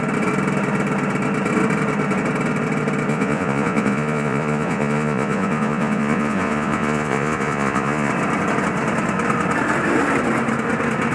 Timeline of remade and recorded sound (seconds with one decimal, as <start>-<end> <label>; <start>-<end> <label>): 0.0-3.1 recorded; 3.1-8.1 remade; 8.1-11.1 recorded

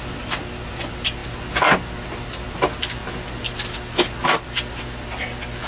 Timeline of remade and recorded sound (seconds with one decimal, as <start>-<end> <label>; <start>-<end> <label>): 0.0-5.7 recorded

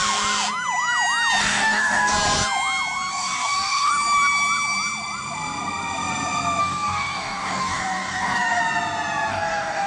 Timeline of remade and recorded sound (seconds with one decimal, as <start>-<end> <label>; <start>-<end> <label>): 0.0-1.4 recorded; 1.4-2.1 remade; 2.1-3.1 recorded; 3.1-3.9 remade; 3.9-6.6 recorded; 6.6-8.6 remade; 8.6-9.3 recorded; 9.3-9.9 remade